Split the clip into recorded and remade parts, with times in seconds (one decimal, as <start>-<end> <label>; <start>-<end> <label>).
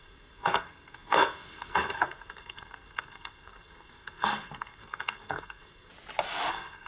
0.0-5.9 remade; 5.9-6.5 recorded; 6.5-6.9 remade